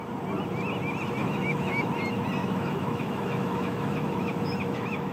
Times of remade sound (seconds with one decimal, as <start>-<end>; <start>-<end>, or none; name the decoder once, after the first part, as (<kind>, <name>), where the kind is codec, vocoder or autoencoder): 1.2-1.9 (autoencoder, DAC-VAE); 2.4-5.1

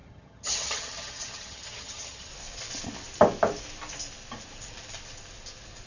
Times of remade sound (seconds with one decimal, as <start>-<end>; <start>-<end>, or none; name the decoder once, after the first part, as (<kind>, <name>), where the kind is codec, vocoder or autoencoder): 0.0-2.3 (vocoder, HiFi-GAN)

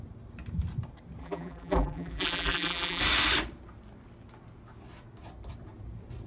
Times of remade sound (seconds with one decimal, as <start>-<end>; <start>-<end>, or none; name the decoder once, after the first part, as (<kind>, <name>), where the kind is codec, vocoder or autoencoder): 1.2-3.0 (vocoder, BigVGAN v2)

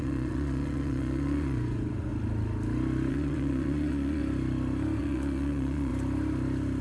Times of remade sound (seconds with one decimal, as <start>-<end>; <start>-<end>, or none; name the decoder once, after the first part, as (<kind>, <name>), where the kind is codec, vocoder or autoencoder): 0.0-2.1 (vocoder, Vocos); 3.1-4.2; 5.0-5.9

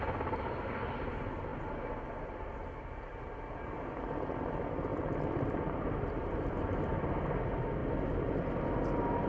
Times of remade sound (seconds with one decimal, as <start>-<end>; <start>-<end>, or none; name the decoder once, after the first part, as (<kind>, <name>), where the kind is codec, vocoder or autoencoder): 4.9-6.9 (vocoder, BigVGAN v2); 7.8-8.5

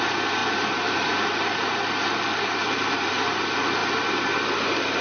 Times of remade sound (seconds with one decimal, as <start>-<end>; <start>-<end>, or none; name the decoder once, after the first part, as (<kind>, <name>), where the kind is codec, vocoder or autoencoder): 0.4-3.4 (vocoder, BigVGAN v2)

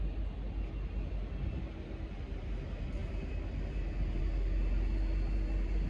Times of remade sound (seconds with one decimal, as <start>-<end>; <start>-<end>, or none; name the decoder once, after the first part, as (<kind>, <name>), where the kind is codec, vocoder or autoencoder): none